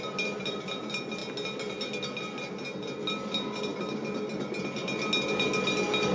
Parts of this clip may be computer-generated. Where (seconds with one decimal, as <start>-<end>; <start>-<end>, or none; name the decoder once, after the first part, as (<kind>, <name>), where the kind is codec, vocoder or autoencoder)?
none

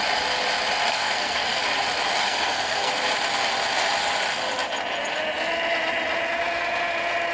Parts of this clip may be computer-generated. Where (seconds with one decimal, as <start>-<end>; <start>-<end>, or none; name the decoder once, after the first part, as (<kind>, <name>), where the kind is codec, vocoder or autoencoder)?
0.9-1.6 (codec, SNAC); 2.2-2.9